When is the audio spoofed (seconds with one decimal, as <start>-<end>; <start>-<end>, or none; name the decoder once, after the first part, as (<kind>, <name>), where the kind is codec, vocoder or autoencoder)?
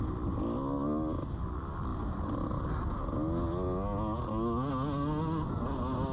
none